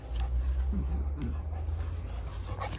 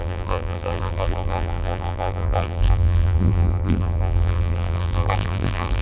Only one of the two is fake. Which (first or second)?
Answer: second